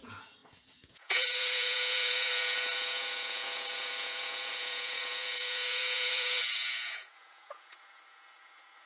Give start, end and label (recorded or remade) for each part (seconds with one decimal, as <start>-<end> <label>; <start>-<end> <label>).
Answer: 0.0-8.9 remade